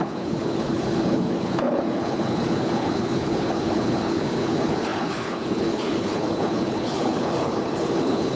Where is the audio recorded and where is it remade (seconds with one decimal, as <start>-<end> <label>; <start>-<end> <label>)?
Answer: 0.0-8.4 remade